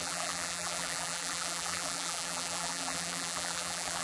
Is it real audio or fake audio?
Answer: fake